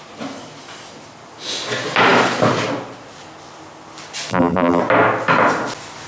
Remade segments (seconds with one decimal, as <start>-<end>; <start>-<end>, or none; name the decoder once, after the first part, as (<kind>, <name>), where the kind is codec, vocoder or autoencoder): 4.3-4.8 (vocoder, BigVGAN v2)